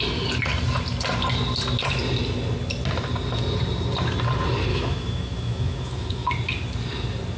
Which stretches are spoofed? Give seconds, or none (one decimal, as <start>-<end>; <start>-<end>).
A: 4.7-6.3